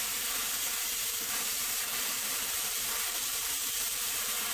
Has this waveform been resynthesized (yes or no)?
yes